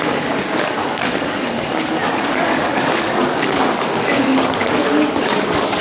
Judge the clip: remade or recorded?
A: remade